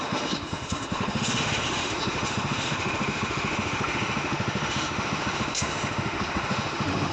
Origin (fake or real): fake